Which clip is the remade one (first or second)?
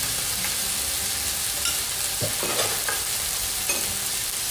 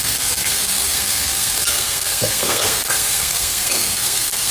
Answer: second